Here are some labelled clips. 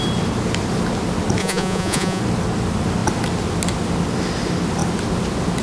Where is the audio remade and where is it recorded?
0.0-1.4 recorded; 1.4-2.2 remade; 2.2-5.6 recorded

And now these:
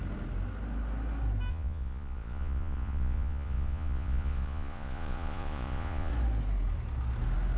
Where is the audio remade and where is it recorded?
0.0-1.5 recorded; 1.5-6.1 remade; 6.1-7.6 recorded

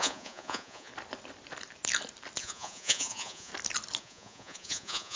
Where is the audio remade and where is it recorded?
0.0-0.9 remade; 0.9-2.4 recorded; 2.4-3.5 remade; 3.5-4.0 recorded; 4.0-5.2 remade

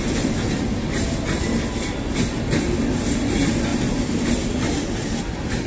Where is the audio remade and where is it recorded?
0.0-5.7 recorded

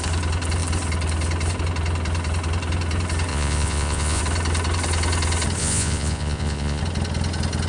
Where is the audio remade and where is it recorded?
0.0-3.3 recorded; 3.3-4.2 remade; 4.2-5.6 recorded; 5.6-6.8 remade; 6.8-7.7 recorded

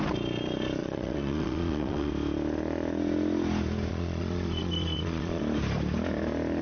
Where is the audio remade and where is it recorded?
0.0-0.8 recorded; 0.8-2.1 remade; 2.1-3.9 recorded; 3.9-5.4 remade; 5.4-6.6 recorded